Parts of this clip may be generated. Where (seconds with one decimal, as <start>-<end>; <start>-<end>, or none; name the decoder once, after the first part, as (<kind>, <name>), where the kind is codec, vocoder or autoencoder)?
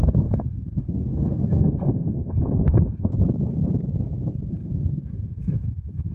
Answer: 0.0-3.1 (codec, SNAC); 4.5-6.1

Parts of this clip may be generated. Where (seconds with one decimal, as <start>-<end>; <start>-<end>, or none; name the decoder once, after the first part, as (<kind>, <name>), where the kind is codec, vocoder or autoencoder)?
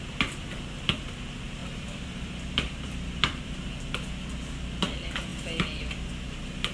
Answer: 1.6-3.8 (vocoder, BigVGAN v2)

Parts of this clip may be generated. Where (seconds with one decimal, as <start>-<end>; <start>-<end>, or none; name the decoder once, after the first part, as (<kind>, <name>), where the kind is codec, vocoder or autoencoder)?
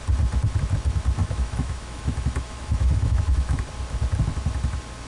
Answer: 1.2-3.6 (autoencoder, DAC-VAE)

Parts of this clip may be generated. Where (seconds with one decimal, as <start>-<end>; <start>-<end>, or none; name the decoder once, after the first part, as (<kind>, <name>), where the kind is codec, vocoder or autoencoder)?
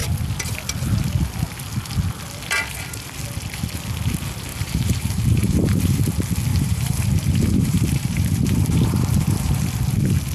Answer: 4.5-6.1 (vocoder, BigVGAN v2); 6.5-9.6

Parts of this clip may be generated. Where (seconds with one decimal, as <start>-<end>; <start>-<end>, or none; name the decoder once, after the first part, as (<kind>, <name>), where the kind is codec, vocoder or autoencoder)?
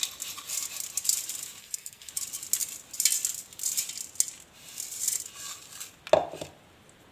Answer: 1.6-2.1 (codec, SNAC)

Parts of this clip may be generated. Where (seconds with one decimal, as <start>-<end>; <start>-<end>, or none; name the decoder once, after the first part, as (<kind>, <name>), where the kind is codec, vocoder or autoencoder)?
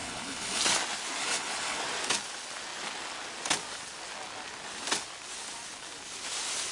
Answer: 0.0-0.6 (codec, HILCodec); 1.2-1.8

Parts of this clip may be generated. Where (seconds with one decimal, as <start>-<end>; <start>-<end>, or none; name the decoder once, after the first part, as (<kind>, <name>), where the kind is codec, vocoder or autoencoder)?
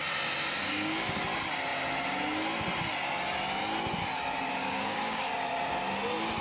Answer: 0.6-1.2 (codec, DAC); 4.6-5.3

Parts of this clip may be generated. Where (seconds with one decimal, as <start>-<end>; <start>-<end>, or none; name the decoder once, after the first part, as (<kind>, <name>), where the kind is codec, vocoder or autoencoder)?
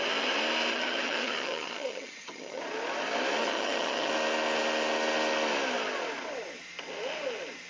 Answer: 0.7-2.6 (vocoder, HiFi-GAN); 3.4-4.1